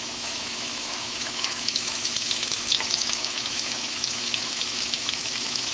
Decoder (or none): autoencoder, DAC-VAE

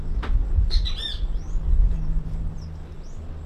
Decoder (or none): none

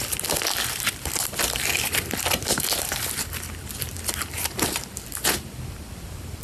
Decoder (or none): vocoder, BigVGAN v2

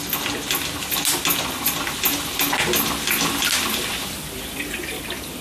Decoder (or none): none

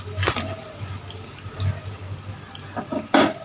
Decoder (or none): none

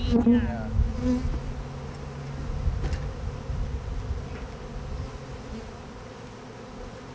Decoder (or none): none